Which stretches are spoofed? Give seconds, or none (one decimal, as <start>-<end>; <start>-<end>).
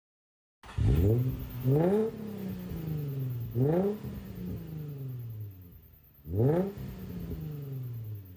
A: none